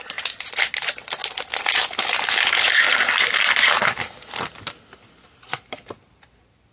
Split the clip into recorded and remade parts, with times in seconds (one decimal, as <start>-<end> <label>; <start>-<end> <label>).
0.0-6.7 recorded

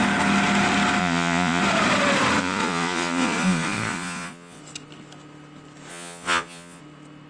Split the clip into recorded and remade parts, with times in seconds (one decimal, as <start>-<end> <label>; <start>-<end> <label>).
0.0-1.0 recorded; 1.0-1.6 remade; 1.6-2.4 recorded; 2.4-4.6 remade; 4.6-5.9 recorded; 5.9-6.8 remade; 6.8-7.3 recorded

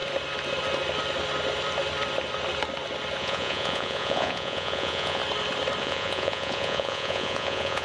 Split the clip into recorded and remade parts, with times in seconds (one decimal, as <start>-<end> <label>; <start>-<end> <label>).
0.0-3.2 recorded; 3.2-5.2 remade; 5.2-5.8 recorded; 5.8-7.8 remade

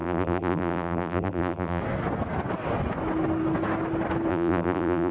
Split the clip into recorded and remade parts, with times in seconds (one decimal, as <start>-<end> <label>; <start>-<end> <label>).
0.0-1.8 remade; 1.8-4.3 recorded; 4.3-5.1 remade

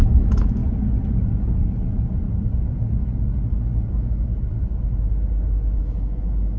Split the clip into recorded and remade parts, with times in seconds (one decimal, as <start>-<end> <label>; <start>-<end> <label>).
0.0-0.6 remade; 0.6-3.9 recorded; 3.9-4.3 remade; 4.3-5.8 recorded; 5.8-6.6 remade

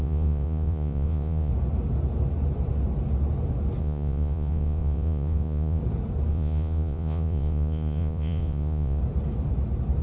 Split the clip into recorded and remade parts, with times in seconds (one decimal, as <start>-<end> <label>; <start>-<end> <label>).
0.0-1.5 remade; 1.5-3.8 recorded; 3.8-5.8 remade; 5.8-6.3 recorded; 6.3-9.0 remade; 9.0-10.0 recorded

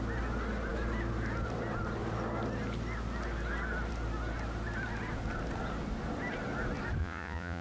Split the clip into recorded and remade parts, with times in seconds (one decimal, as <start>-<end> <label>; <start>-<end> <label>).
0.0-7.0 recorded; 7.0-7.6 remade

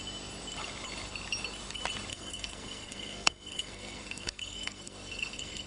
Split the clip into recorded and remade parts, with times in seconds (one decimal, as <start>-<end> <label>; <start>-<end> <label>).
0.0-2.1 recorded; 2.1-5.7 remade